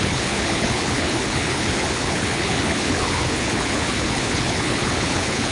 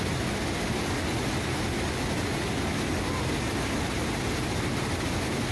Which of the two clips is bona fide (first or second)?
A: second